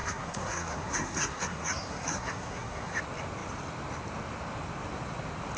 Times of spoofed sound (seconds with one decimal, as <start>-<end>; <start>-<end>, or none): 0.0-3.0